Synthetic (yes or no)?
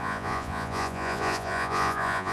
yes